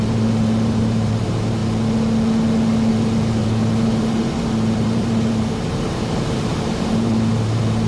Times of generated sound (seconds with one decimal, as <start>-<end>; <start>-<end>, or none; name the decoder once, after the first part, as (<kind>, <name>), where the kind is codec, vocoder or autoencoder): 0.0-1.6 (vocoder, BigVGAN v2); 2.9-7.9